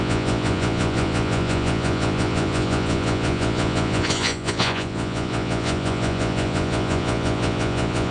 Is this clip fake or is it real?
fake